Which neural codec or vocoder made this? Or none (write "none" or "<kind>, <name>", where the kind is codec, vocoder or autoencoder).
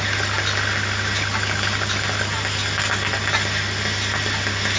none